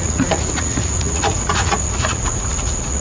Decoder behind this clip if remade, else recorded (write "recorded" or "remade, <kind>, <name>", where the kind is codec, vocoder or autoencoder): remade, vocoder, Vocos